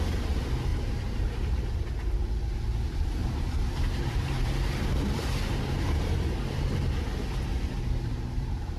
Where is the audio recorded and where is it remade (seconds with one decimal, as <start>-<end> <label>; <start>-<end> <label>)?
0.0-0.7 recorded; 0.7-1.2 remade; 1.2-3.2 recorded; 3.2-7.0 remade; 7.0-7.5 recorded; 7.5-8.8 remade